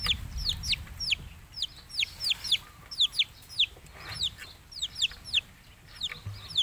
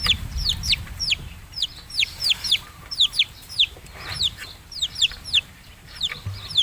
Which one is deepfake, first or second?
second